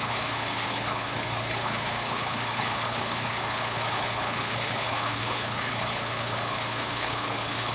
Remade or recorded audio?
remade